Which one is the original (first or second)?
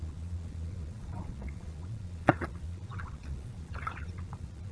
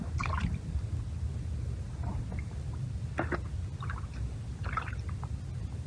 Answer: second